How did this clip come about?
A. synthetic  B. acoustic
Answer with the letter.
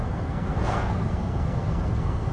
A